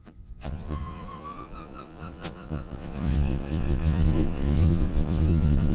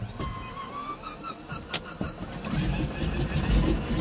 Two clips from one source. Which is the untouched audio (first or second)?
second